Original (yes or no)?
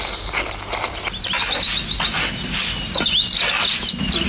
yes